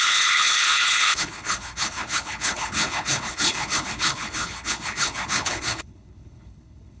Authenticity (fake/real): fake